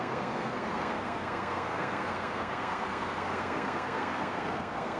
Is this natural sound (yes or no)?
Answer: no